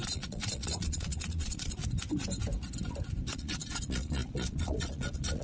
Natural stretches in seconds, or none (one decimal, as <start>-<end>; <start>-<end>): 1.8-3.3